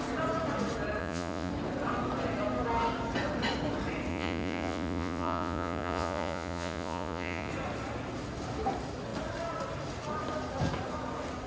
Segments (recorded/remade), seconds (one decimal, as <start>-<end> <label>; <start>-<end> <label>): 0.0-1.0 recorded; 1.0-1.5 remade; 1.5-4.1 recorded; 4.1-7.5 remade; 7.5-11.5 recorded